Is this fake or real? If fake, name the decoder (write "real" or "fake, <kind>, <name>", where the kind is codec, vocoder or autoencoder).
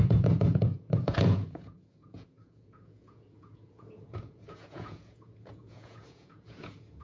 fake, vocoder, Vocos